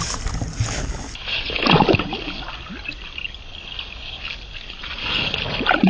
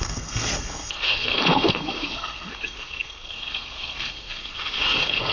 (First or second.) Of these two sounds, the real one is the first